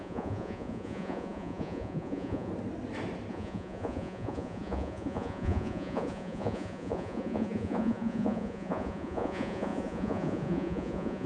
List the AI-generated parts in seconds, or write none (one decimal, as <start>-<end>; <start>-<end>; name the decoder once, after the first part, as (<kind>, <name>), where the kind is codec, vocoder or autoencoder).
0.0-2.5 (vocoder, Vocos); 3.3-11.3